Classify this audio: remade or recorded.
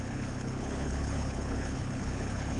remade